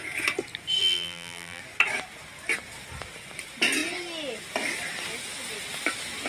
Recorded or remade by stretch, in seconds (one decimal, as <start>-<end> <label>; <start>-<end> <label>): 0.0-0.8 recorded; 0.8-1.6 remade; 1.6-6.3 recorded